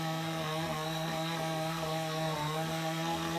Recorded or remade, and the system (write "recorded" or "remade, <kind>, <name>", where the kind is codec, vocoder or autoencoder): remade, codec, SNAC